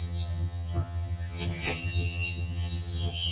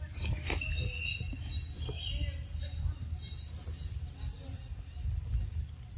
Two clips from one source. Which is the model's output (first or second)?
first